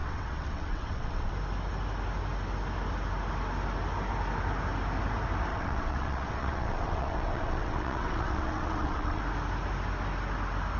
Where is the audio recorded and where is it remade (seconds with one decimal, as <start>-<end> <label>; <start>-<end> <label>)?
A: 0.0-1.3 remade; 1.3-5.5 recorded; 5.5-9.2 remade; 9.2-10.8 recorded